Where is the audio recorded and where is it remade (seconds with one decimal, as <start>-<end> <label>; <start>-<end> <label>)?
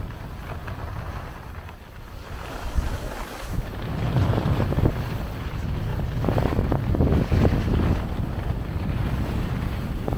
0.0-10.2 recorded